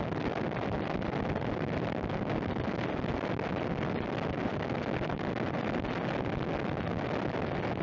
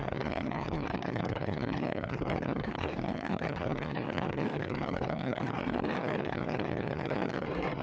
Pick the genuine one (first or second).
first